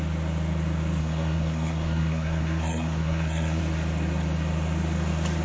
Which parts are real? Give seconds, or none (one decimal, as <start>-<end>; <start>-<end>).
0.0-1.0; 3.6-5.4